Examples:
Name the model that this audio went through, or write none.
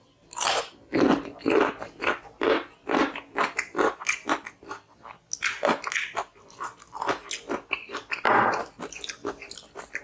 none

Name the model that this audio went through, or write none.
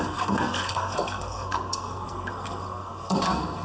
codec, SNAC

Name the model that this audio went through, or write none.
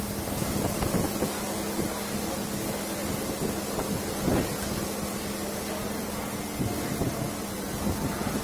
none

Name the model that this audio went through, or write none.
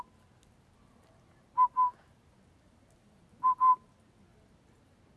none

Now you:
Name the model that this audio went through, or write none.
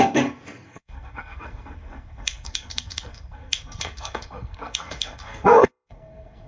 codec, SNAC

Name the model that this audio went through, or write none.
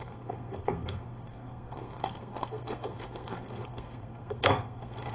codec, SNAC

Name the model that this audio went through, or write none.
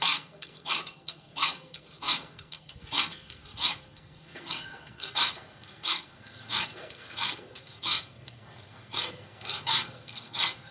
codec, SNAC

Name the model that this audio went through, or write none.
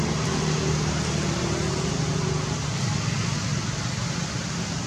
none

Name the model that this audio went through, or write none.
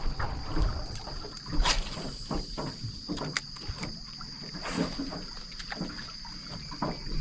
none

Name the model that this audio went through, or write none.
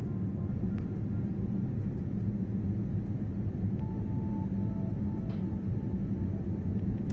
none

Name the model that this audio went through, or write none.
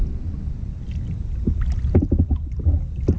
none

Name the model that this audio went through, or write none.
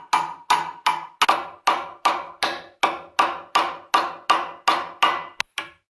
none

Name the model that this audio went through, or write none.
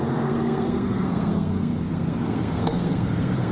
codec, SNAC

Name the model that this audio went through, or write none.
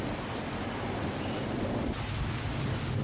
none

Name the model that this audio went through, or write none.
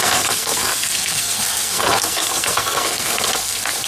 codec, SNAC